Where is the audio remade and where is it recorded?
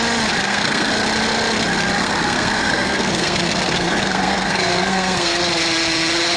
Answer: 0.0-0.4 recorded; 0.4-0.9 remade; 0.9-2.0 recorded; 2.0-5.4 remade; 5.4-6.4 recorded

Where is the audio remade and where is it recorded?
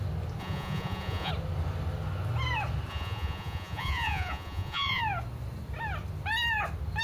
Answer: 0.0-0.4 recorded; 0.4-1.3 remade; 1.3-2.9 recorded; 2.9-5.0 remade; 5.0-7.0 recorded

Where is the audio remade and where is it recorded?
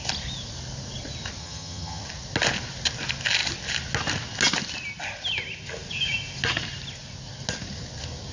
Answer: 0.0-1.4 recorded; 1.4-2.0 remade; 2.0-8.3 recorded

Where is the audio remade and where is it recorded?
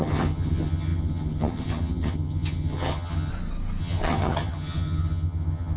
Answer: 0.0-3.3 remade; 3.3-3.8 recorded; 3.8-5.8 remade